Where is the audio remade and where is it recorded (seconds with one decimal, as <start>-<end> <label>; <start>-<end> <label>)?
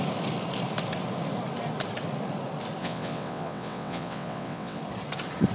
0.0-2.8 recorded; 2.8-4.8 remade; 4.8-5.5 recorded